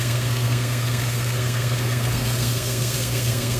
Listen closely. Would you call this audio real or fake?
fake